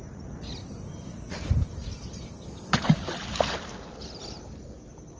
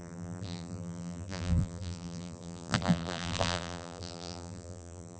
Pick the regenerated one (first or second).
second